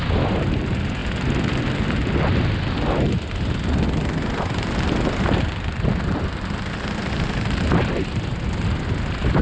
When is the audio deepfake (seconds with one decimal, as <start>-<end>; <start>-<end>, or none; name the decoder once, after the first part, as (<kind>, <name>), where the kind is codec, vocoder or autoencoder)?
none